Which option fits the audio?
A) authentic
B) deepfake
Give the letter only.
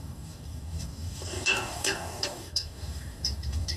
B